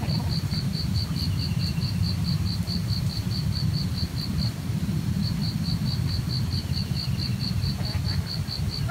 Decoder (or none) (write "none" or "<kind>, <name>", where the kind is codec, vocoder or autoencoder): none